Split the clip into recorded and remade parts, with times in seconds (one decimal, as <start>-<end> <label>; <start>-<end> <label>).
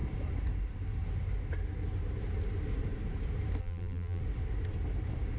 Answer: 0.0-3.6 recorded; 3.6-4.2 remade; 4.2-5.4 recorded